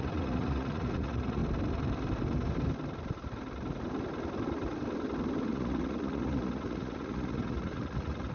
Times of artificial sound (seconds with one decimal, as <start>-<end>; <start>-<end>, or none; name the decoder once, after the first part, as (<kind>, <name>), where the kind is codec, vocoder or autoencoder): 0.0-1.4 (vocoder, Vocos); 5.5-8.3